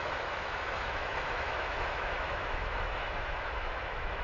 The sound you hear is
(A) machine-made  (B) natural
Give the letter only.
A